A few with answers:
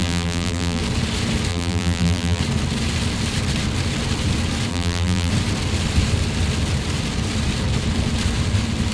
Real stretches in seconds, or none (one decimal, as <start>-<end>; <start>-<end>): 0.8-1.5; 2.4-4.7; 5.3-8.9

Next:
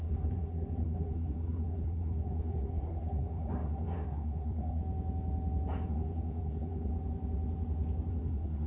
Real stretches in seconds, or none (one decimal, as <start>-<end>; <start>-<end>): 4.8-5.9; 6.9-8.1

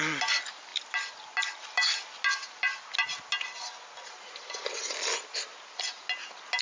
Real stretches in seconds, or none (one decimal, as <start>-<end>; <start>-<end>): 0.0-6.6